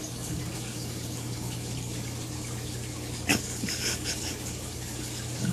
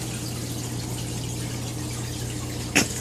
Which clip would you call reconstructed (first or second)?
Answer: first